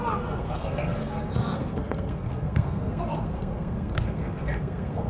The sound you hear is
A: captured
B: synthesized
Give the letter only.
B